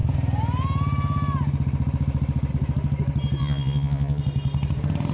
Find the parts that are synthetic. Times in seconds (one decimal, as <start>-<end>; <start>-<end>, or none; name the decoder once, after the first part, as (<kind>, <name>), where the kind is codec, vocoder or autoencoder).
3.4-4.2 (vocoder, Vocos)